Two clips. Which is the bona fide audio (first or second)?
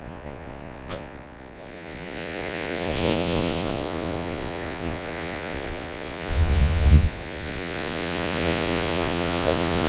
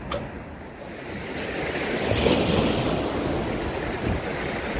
second